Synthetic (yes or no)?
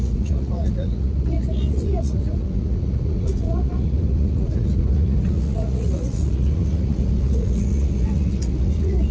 yes